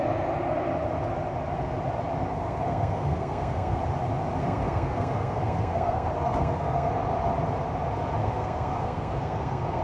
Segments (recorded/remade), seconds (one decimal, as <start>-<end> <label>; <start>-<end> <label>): 0.0-2.3 recorded; 2.3-3.8 remade; 3.8-4.4 recorded; 4.4-6.9 remade; 6.9-8.2 recorded; 8.2-9.8 remade

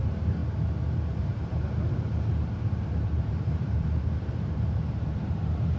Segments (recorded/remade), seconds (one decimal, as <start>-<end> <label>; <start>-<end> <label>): 0.0-0.4 remade; 0.4-1.2 recorded; 1.2-5.8 remade